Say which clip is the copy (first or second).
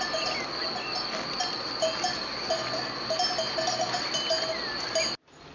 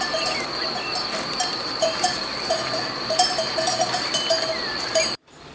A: second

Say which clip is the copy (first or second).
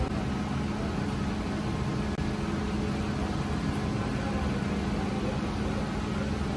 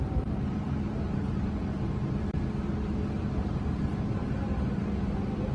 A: second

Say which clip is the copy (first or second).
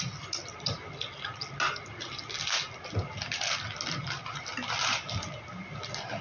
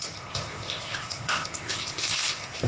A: second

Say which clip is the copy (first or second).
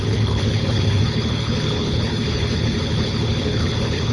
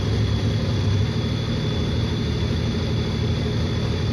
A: first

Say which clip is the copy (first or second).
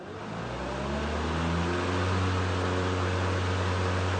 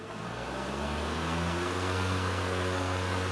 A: second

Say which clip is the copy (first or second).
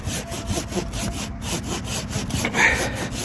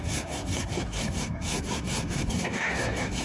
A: second